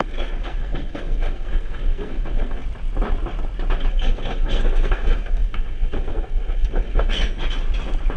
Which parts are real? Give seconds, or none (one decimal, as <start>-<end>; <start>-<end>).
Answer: 2.6-3.9; 7.4-8.2